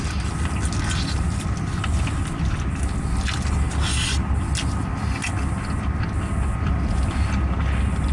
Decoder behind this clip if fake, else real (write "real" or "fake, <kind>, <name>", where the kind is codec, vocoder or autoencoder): real